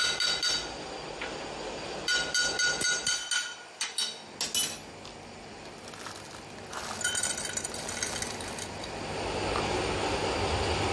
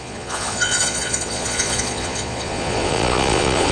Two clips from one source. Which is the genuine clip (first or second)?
first